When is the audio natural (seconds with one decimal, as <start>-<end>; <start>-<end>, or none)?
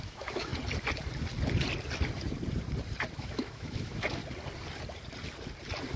0.5-3.1; 4.2-6.0